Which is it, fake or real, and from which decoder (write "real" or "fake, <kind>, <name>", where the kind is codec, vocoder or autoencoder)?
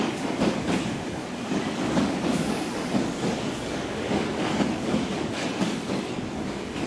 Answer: fake, codec, DAC